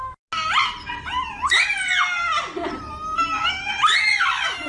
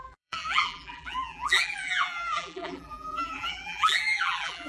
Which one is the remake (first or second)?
second